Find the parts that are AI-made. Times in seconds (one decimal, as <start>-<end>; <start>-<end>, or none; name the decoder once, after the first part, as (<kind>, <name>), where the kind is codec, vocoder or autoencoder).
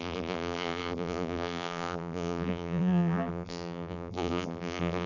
0.0-5.1 (vocoder, BigVGAN v2)